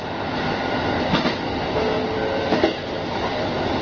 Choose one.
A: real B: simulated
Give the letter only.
A